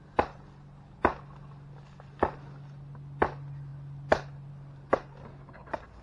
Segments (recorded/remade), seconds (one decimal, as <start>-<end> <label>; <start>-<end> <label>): 0.0-6.0 recorded

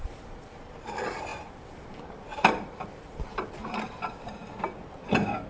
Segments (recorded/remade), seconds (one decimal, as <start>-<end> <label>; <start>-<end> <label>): 0.0-5.5 remade

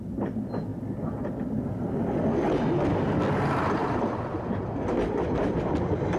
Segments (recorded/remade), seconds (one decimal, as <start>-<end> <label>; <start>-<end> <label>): 0.0-3.8 recorded; 3.8-4.6 remade; 4.6-6.2 recorded

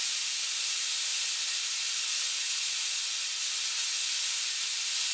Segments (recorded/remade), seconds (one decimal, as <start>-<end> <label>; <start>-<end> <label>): 0.0-0.9 remade; 0.9-4.0 recorded; 4.0-5.1 remade